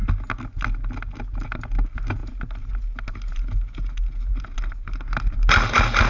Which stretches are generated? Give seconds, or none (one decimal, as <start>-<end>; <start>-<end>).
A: none